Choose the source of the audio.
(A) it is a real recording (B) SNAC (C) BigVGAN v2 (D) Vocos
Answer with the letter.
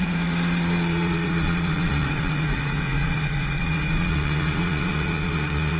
D